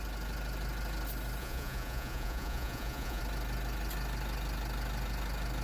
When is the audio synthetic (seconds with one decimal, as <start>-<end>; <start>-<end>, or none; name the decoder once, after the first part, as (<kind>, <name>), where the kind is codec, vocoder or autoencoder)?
1.4-3.2 (vocoder, Vocos)